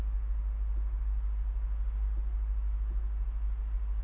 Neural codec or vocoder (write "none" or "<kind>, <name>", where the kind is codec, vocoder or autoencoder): none